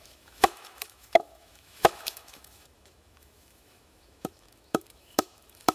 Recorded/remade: remade